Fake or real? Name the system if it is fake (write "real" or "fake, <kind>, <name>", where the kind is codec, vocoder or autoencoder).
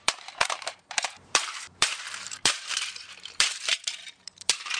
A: fake, vocoder, BigVGAN v2